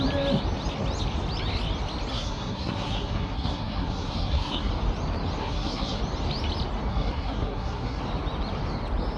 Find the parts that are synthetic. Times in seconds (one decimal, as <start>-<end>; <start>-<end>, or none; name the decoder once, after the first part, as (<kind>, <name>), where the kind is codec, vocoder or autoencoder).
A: 2.1-4.7 (codec, SNAC); 5.4-6.0; 6.9-8.0